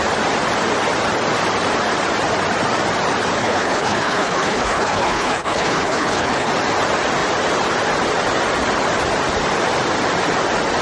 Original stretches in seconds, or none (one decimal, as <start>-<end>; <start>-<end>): 0.0-3.4; 6.5-10.8